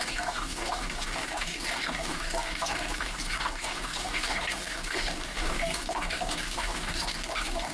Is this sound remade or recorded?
remade